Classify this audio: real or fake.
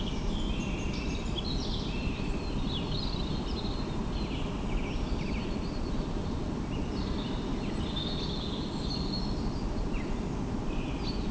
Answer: real